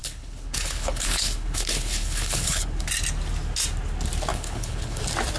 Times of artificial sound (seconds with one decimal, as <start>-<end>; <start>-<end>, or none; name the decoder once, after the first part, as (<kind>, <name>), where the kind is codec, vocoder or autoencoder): 0.0-2.9 (codec, HILCodec); 4.3-5.0